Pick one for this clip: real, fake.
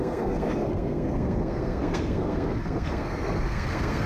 fake